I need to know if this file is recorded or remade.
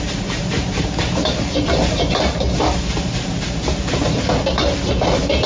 remade